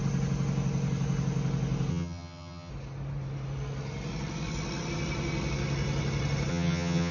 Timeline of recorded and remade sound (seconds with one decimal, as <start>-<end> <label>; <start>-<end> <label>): 0.0-1.9 recorded; 1.9-2.7 remade; 2.7-6.5 recorded; 6.5-7.1 remade